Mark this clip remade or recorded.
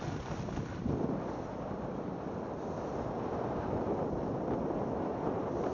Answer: recorded